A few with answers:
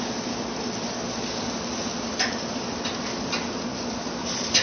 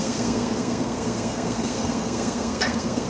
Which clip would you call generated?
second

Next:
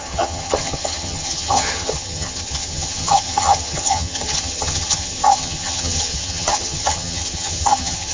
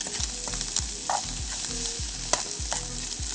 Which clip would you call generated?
first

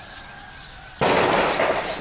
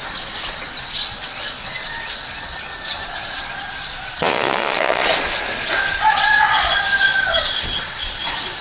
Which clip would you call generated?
second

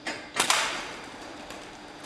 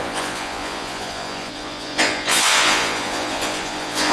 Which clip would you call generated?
second